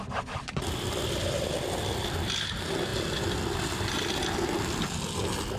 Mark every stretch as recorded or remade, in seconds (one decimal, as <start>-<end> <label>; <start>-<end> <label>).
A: 0.0-5.6 recorded